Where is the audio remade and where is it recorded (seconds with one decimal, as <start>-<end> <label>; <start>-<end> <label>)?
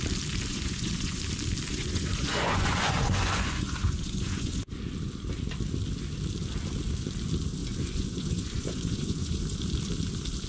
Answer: 0.0-0.5 recorded; 0.5-1.2 remade; 1.2-1.7 recorded; 1.7-4.8 remade; 4.8-7.6 recorded; 7.6-9.4 remade; 9.4-10.5 recorded